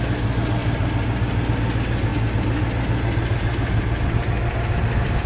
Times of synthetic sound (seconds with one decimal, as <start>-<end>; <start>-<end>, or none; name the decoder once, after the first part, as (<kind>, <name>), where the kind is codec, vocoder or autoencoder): none